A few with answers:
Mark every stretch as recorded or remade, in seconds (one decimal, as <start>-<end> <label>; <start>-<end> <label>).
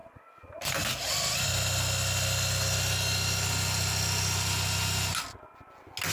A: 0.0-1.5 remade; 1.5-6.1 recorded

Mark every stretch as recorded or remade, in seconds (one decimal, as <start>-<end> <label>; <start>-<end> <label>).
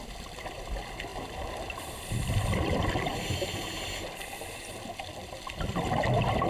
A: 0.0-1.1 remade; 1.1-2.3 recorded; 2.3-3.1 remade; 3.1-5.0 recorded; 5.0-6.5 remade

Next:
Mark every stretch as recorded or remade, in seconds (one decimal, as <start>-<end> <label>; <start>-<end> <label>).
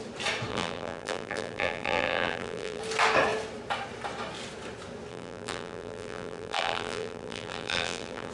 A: 0.0-0.5 recorded; 0.5-2.8 remade; 2.8-5.1 recorded; 5.1-8.3 remade